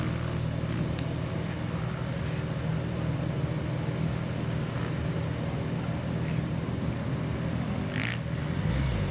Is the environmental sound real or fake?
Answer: real